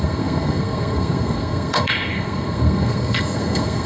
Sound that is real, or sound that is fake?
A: fake